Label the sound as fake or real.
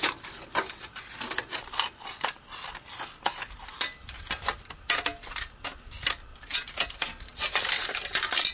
real